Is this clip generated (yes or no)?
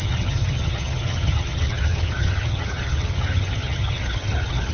yes